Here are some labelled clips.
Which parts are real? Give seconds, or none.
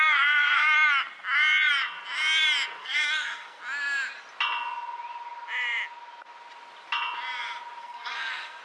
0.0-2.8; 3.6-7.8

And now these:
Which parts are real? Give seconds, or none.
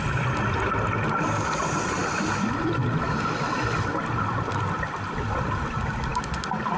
0.0-6.8